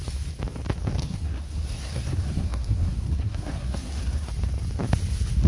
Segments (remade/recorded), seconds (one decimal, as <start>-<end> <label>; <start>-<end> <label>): 0.0-1.0 recorded; 1.0-4.3 remade; 4.3-5.5 recorded